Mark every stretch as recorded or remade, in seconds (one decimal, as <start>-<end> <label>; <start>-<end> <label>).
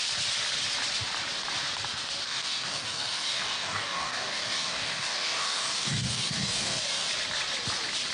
0.0-2.2 recorded; 2.2-7.1 remade; 7.1-8.1 recorded